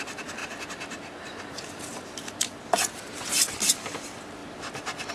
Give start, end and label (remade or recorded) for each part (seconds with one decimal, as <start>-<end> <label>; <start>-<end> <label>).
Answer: 0.0-0.4 remade; 0.4-1.2 recorded; 1.2-4.4 remade; 4.4-5.1 recorded